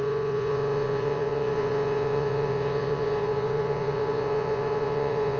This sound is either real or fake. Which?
fake